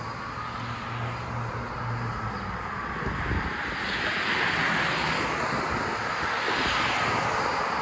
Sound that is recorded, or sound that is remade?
recorded